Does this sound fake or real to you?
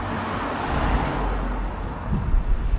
real